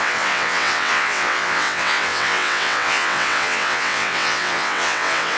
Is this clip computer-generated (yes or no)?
yes